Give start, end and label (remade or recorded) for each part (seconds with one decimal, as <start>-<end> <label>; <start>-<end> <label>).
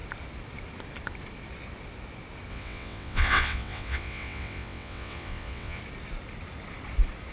0.0-2.5 recorded; 2.5-5.8 remade; 5.8-7.3 recorded